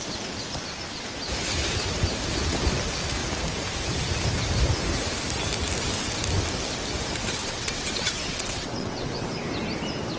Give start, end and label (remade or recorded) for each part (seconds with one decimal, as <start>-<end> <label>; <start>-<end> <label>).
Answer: 0.0-7.4 recorded; 7.4-9.3 remade; 9.3-10.2 recorded

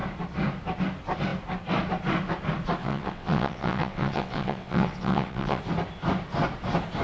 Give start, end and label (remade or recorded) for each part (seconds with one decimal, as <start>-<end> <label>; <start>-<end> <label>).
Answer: 0.0-2.8 recorded; 2.8-5.6 remade; 5.6-7.0 recorded

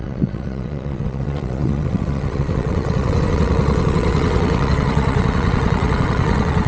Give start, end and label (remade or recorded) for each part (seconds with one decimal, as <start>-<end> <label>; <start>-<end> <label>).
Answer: 0.0-6.7 remade

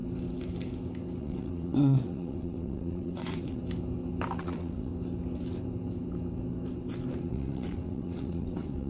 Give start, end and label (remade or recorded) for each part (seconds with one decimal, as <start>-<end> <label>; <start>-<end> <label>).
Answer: 0.0-1.2 recorded; 1.2-3.6 remade; 3.6-4.4 recorded; 4.4-4.9 remade; 4.9-7.2 recorded; 7.2-8.9 remade

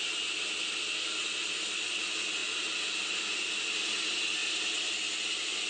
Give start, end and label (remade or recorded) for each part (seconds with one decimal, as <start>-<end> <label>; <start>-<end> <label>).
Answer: 0.0-5.7 recorded

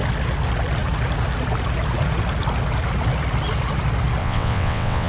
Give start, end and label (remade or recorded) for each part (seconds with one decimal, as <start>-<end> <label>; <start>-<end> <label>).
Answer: 0.0-4.2 recorded; 4.2-5.1 remade

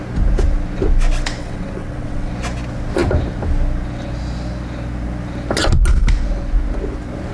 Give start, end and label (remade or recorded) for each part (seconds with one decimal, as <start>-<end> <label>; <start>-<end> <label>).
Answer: 0.0-1.4 recorded; 1.4-2.3 remade; 2.3-7.3 recorded

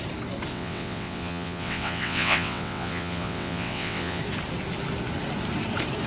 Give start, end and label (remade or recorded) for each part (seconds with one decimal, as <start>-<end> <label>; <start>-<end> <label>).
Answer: 0.0-0.5 recorded; 0.5-4.2 remade; 4.2-6.1 recorded